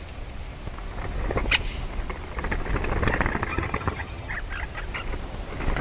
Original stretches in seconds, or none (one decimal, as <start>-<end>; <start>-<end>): 0.0-3.5; 4.3-5.8